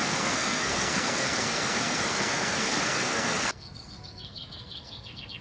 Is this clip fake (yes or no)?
yes